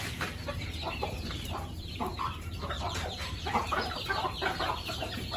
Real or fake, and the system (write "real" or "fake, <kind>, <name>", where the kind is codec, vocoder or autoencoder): fake, vocoder, BigVGAN v2